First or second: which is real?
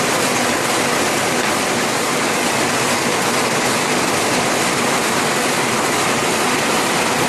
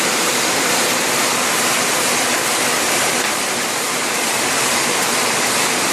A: first